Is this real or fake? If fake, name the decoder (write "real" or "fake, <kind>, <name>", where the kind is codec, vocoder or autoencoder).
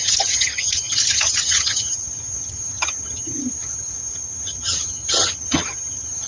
fake, vocoder, HiFi-GAN